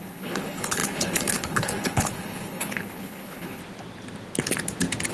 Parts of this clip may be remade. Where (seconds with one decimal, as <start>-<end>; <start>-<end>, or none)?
0.0-3.6